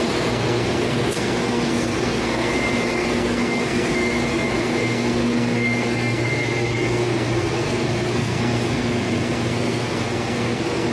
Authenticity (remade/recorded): remade